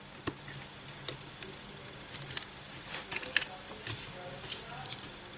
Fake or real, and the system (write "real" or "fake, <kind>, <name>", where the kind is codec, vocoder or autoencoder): real